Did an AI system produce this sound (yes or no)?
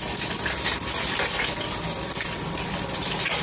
no